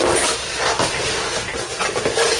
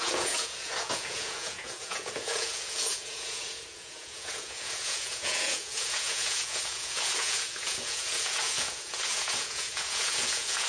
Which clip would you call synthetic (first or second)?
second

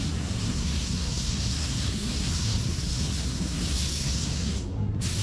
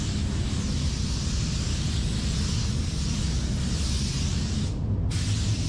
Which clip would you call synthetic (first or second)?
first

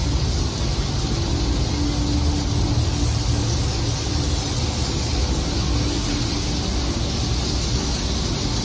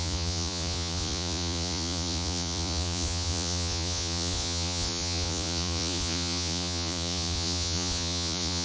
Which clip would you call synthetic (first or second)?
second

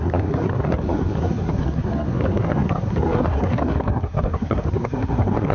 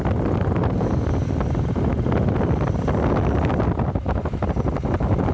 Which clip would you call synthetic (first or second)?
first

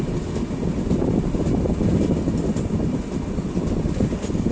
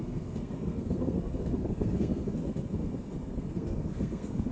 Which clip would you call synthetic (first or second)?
second